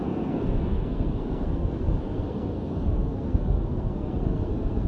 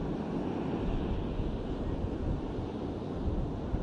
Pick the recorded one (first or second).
second